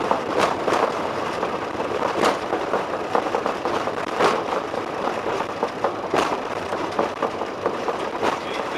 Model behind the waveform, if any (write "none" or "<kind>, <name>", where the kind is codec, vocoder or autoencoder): vocoder, BigVGAN v2